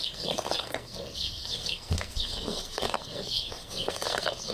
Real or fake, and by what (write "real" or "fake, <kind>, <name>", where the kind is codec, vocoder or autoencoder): fake, codec, SNAC